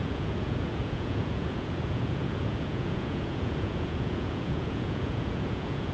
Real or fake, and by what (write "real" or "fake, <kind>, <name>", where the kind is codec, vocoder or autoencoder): fake, vocoder, Vocos